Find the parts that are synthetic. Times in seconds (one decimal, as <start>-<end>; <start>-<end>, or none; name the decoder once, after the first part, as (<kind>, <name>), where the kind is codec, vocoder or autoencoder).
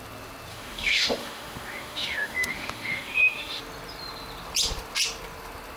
0.5-3.6 (autoencoder, DAC-VAE)